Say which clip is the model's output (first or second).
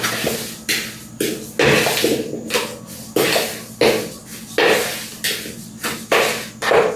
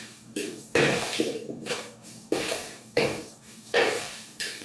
second